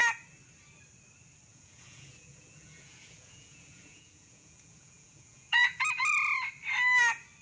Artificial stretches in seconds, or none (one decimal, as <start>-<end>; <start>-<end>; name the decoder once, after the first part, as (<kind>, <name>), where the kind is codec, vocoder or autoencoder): 1.5-5.8 (vocoder, Vocos)